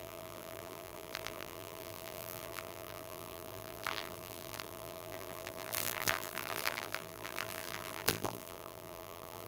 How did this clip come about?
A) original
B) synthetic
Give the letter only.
B